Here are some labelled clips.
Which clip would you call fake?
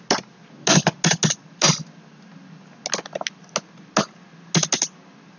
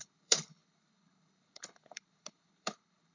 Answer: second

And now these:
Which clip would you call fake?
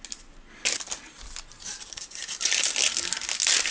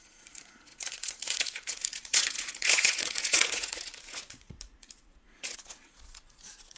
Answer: second